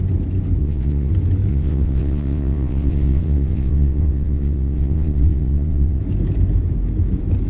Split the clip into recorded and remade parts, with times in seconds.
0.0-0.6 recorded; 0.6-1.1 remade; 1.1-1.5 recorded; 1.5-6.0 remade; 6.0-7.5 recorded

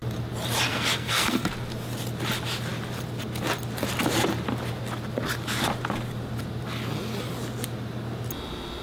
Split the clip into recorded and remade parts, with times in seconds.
0.0-0.7 recorded; 0.7-1.5 remade; 1.5-8.8 recorded

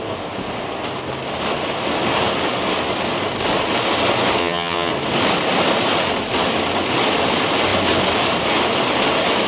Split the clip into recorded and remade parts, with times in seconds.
0.0-4.4 recorded; 4.4-4.9 remade; 4.9-9.5 recorded

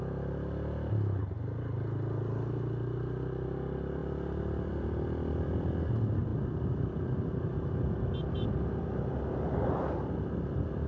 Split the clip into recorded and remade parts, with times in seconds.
0.0-4.0 recorded; 4.0-4.7 remade; 4.7-10.9 recorded

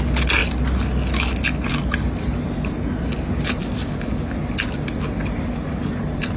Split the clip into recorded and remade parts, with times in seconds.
0.0-6.4 recorded

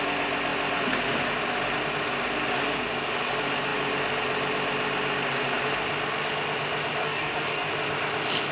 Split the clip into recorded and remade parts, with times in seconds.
0.0-7.0 recorded; 7.0-7.7 remade; 7.7-8.5 recorded